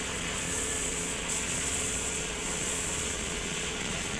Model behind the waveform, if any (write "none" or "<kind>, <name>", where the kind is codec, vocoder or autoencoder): vocoder, Vocos